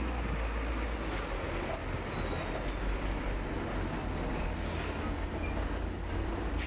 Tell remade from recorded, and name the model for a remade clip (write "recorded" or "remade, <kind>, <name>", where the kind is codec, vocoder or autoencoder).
recorded